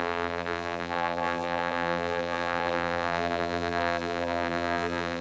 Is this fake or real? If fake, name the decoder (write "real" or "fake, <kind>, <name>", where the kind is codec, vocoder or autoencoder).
fake, vocoder, BigVGAN v2